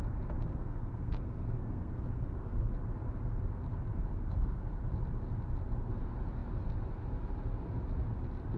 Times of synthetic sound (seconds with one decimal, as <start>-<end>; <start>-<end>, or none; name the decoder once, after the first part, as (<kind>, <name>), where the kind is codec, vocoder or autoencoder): 0.5-2.7 (codec, SNAC); 4.1-4.8